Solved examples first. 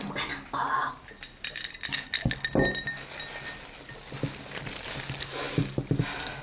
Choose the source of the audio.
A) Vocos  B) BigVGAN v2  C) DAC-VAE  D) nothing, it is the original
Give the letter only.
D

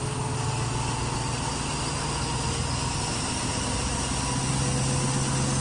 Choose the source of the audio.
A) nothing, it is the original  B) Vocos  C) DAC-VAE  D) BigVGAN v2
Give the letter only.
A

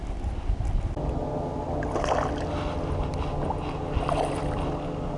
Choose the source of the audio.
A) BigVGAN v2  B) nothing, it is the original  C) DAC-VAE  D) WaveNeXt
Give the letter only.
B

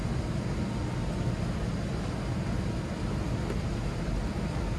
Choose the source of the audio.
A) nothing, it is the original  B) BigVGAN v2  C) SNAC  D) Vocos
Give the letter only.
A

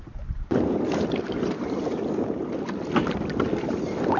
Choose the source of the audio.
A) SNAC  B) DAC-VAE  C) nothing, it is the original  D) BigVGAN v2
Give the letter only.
C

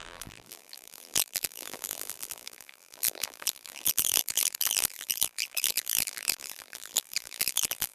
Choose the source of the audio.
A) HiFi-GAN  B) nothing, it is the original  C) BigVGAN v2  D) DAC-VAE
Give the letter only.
C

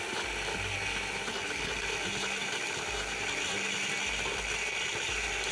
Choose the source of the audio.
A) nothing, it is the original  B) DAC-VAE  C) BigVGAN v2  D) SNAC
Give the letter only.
A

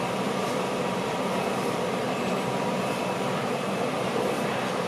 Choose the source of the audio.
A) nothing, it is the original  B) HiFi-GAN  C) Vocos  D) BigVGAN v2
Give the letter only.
D